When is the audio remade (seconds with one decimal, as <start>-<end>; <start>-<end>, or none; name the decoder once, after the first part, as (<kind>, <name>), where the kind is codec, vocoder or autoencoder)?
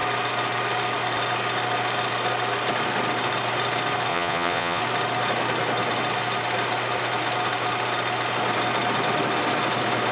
4.1-4.8 (vocoder, Vocos)